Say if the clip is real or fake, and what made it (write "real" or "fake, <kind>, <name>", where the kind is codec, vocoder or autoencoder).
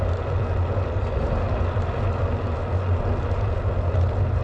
real